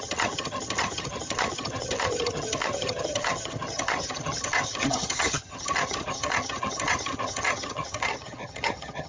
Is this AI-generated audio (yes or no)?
yes